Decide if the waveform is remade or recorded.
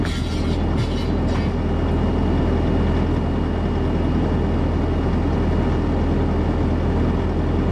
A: recorded